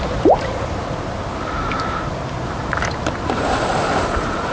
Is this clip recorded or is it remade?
remade